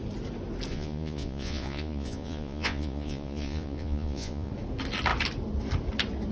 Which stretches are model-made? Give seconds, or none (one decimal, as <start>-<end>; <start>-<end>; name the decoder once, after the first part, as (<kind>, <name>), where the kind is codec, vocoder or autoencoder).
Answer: 0.7-4.5 (vocoder, Vocos)